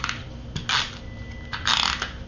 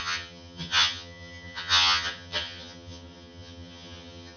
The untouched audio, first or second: first